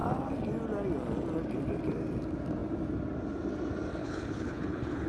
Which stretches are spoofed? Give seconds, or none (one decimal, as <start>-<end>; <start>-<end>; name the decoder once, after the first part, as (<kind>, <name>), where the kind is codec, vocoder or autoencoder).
4.0-5.1 (codec, HILCodec)